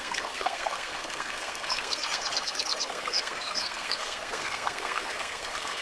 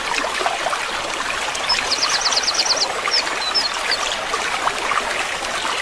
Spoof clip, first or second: first